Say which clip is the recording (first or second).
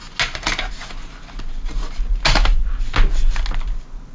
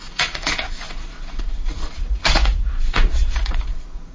first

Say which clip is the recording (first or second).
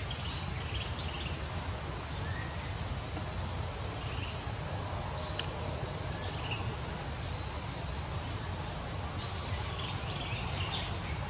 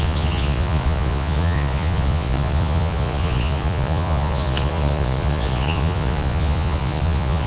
first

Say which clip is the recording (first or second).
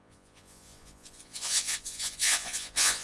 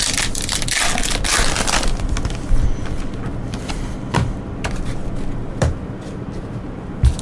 second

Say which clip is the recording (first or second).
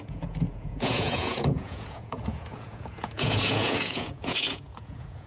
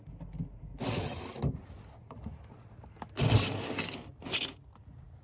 second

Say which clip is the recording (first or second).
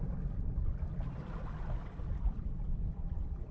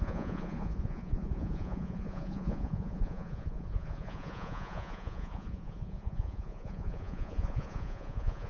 first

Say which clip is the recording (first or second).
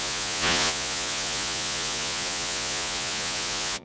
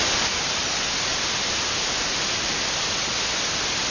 second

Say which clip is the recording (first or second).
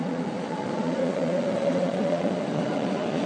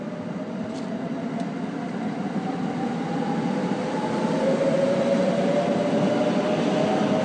second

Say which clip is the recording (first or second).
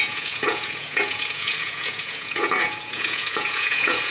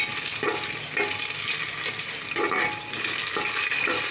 second